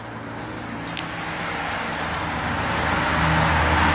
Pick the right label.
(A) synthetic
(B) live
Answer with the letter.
B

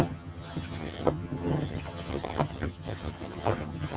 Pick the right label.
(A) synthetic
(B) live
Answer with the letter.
A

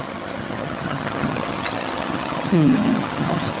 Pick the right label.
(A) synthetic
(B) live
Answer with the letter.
A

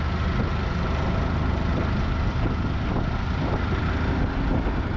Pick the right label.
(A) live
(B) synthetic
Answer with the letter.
A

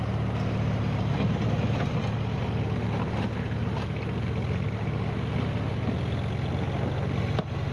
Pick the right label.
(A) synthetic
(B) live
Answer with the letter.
B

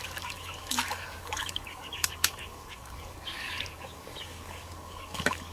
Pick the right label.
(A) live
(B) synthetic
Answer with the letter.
B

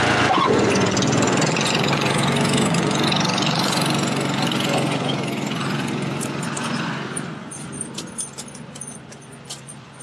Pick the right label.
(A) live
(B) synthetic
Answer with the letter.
B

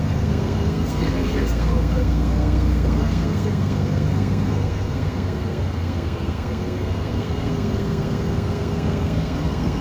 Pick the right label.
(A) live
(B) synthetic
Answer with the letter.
B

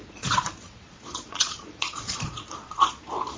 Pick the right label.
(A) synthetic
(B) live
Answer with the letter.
A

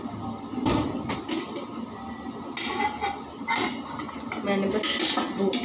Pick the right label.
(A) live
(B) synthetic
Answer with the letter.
A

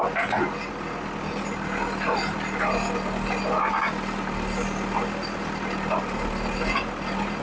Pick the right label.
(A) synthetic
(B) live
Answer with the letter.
B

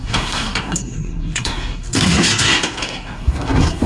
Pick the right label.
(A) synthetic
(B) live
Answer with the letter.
A